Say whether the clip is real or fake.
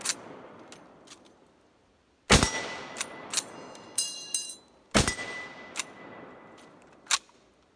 real